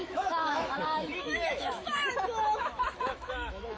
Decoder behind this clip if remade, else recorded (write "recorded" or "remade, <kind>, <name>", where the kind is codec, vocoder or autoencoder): remade, autoencoder, DAC-VAE